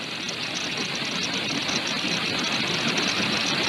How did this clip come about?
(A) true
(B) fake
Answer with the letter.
A